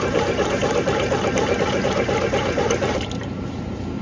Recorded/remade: remade